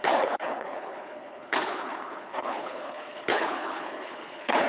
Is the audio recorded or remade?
remade